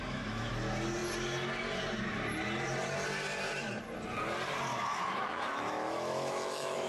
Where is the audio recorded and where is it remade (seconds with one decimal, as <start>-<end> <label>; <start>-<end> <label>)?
0.0-0.5 remade; 0.5-4.7 recorded; 4.7-6.9 remade